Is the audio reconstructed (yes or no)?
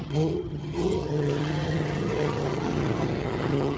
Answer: yes